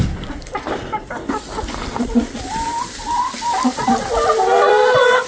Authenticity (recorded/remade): remade